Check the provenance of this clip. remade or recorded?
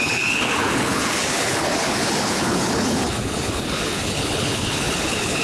remade